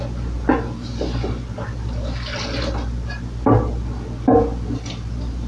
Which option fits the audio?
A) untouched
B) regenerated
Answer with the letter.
A